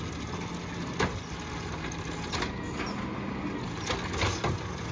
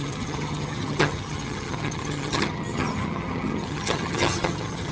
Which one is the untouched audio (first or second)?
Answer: first